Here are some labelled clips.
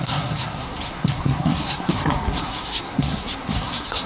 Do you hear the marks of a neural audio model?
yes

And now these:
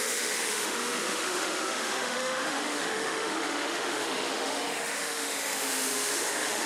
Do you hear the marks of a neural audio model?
yes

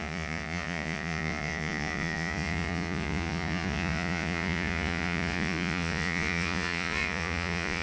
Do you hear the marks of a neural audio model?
yes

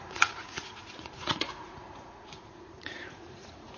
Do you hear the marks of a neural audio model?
yes